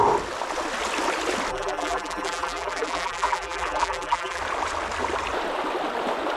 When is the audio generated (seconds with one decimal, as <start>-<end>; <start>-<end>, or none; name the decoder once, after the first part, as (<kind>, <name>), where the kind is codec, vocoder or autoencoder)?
1.5-4.4 (vocoder, BigVGAN v2)